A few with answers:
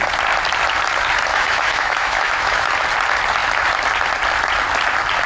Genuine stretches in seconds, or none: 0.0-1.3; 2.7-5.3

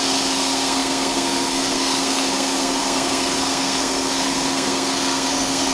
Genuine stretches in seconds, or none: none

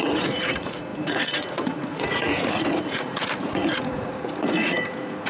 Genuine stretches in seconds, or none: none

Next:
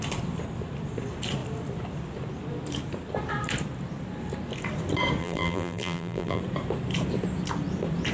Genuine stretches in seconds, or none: 0.0-5.2; 6.4-8.1